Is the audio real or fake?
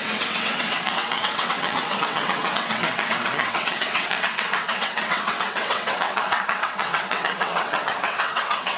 fake